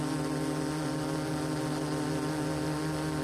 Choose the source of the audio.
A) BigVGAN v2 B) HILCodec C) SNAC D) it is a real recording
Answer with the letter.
D